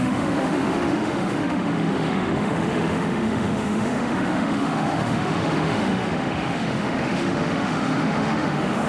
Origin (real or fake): fake